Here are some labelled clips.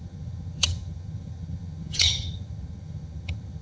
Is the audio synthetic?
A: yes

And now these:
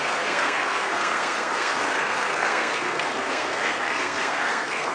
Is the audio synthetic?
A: yes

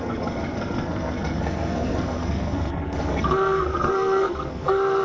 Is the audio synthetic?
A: yes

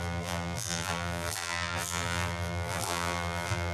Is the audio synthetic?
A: yes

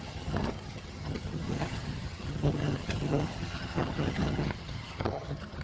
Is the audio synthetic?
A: yes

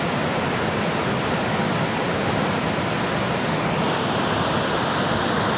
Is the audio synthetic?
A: no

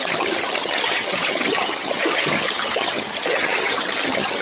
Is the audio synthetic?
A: yes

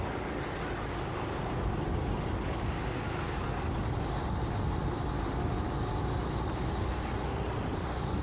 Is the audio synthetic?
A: no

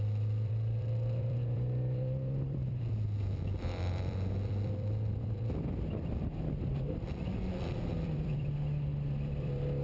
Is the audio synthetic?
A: yes